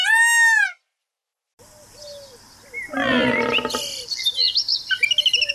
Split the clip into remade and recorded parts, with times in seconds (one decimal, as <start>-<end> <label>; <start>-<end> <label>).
0.0-5.5 recorded